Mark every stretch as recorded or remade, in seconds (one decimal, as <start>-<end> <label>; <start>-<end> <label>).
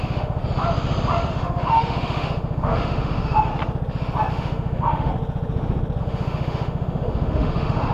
0.0-0.4 remade; 0.4-1.3 recorded; 1.3-3.5 remade; 3.5-4.3 recorded; 4.3-5.1 remade; 5.1-6.0 recorded; 6.0-7.9 remade